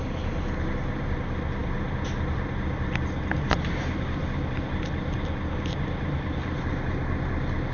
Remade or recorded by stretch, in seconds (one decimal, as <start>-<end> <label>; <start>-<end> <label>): 0.0-7.7 recorded